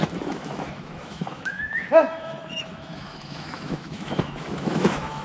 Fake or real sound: fake